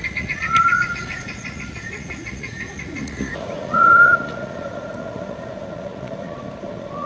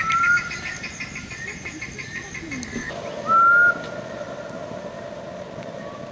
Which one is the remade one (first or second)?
first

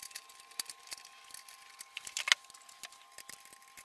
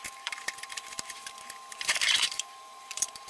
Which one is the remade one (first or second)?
second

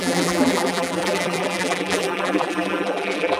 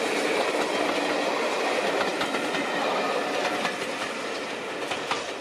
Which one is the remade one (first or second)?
first